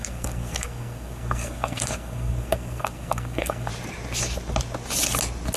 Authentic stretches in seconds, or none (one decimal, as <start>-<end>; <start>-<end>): 3.7-5.6